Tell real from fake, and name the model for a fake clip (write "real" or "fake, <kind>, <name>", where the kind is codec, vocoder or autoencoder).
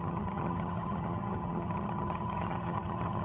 fake, vocoder, HiFi-GAN